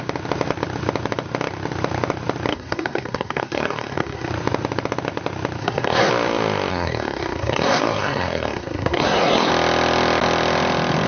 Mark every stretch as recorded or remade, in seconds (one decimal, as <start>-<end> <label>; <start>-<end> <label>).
0.0-2.5 recorded; 2.5-4.3 remade; 4.3-5.6 recorded; 5.6-6.1 remade; 6.1-6.7 recorded; 6.7-9.5 remade; 9.5-11.1 recorded